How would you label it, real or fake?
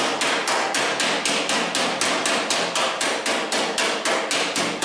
real